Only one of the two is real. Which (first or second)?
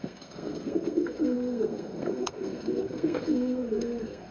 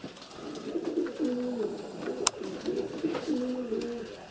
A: second